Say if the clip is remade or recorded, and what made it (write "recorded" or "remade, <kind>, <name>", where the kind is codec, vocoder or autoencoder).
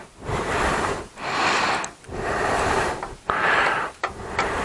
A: remade, vocoder, BigVGAN v2